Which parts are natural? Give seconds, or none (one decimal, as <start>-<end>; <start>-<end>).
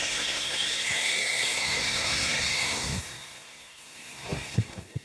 none